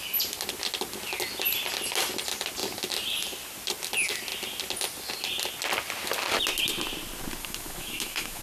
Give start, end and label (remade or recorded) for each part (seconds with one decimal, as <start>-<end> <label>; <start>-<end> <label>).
0.0-7.4 recorded; 7.4-8.4 remade

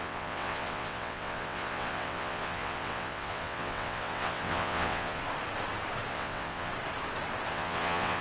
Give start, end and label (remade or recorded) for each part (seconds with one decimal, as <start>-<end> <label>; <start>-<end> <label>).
0.0-5.2 remade; 5.2-6.1 recorded; 6.1-6.7 remade; 6.7-7.5 recorded; 7.5-8.2 remade

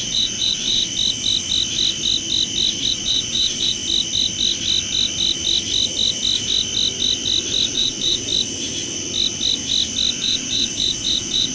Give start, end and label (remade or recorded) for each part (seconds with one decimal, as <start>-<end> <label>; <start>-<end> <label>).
0.0-0.8 remade; 0.8-2.9 recorded; 2.9-3.8 remade; 3.8-7.7 recorded; 7.7-8.3 remade; 8.3-10.2 recorded; 10.2-11.5 remade